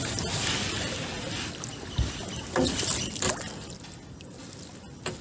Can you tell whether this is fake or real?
real